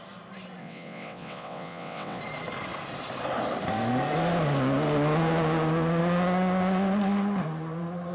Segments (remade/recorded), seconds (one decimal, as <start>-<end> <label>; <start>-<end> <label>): 0.0-0.6 recorded; 0.6-2.2 remade; 2.2-8.1 recorded